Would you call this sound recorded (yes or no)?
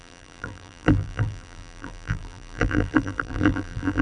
no